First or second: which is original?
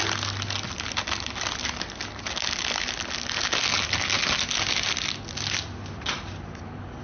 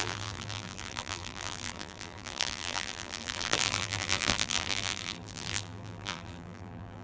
first